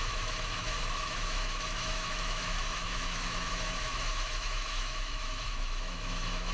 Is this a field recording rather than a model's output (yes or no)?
no